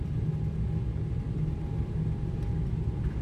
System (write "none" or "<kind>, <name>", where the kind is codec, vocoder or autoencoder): none